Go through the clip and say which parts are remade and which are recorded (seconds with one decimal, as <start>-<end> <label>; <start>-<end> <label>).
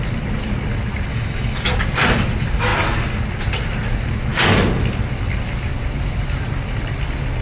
0.0-1.1 recorded; 1.1-1.7 remade; 1.7-7.4 recorded